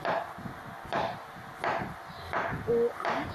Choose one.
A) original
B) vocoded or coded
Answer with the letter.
A